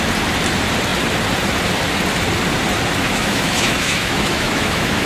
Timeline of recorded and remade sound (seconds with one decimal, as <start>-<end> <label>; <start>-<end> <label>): 0.0-3.0 recorded; 3.0-5.1 remade